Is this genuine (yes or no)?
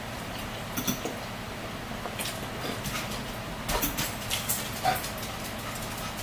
yes